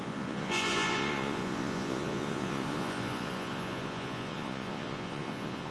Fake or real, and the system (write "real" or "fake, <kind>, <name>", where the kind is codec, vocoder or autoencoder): fake, vocoder, Vocos